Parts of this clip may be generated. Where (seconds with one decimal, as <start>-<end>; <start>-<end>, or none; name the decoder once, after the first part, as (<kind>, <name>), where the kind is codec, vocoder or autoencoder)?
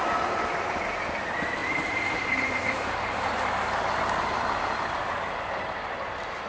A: 1.6-5.2 (vocoder, BigVGAN v2)